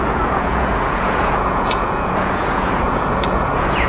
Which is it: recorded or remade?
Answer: remade